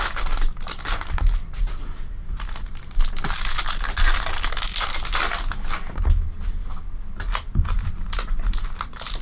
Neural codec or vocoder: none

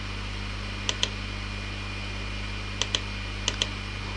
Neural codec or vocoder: none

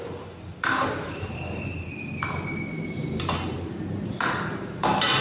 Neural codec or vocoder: vocoder, BigVGAN v2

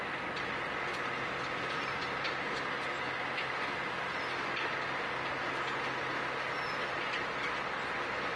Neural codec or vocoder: none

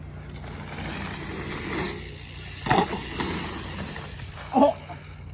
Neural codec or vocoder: none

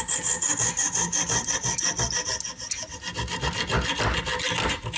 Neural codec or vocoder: none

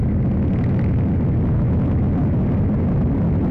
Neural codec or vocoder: none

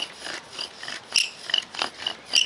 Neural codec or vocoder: none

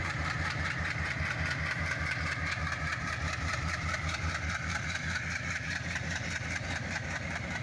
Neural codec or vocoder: vocoder, BigVGAN v2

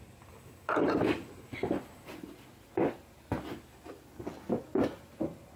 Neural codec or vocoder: none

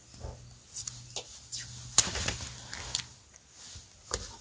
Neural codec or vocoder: none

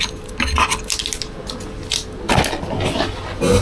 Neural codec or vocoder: none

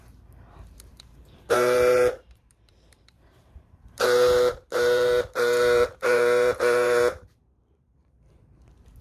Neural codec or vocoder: vocoder, BigVGAN v2